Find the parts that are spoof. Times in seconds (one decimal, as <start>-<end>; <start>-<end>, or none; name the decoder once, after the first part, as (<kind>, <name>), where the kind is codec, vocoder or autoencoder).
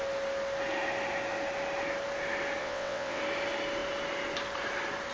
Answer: 2.6-3.2 (vocoder, WaveNeXt)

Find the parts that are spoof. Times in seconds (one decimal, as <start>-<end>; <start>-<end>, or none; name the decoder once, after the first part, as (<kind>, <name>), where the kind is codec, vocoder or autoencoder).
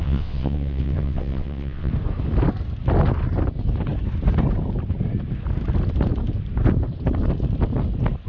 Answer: 0.0-1.9 (vocoder, WaveNeXt)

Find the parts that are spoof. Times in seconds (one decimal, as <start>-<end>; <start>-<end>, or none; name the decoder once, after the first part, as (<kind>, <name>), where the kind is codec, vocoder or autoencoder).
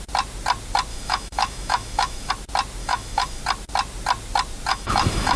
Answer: 0.9-2.3 (autoencoder, DAC-VAE); 2.8-3.4; 4.7-5.4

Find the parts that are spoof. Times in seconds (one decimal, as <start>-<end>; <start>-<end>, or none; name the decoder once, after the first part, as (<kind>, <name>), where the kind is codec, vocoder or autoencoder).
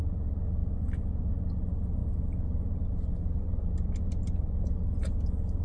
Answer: none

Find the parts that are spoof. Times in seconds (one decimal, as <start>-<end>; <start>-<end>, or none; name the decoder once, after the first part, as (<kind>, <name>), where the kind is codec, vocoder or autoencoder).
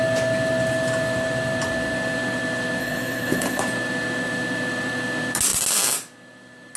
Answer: 2.8-3.6 (codec, HILCodec)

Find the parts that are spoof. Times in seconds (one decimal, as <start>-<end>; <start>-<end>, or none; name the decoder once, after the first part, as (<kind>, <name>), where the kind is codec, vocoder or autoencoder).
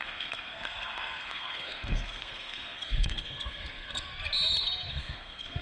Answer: 0.0-4.1 (codec, SNAC); 4.9-5.6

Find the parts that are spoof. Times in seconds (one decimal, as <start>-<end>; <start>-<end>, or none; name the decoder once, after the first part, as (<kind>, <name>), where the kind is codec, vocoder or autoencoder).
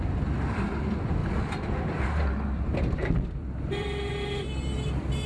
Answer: 1.2-4.1 (vocoder, BigVGAN v2)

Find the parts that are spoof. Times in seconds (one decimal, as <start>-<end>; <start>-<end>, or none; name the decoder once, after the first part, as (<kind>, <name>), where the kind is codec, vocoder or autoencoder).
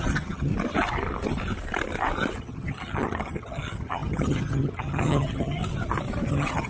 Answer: 0.0-0.5 (vocoder, HiFi-GAN); 2.4-5.6; 6.3-6.7